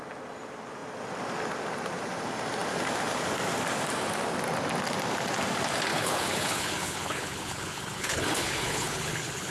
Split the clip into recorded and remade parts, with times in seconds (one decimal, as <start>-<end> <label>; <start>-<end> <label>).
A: 0.0-5.9 recorded; 5.9-9.5 remade